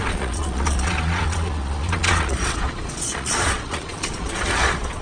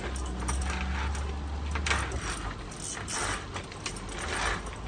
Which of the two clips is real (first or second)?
second